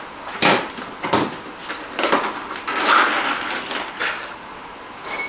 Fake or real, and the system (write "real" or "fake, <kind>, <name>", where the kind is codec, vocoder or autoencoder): real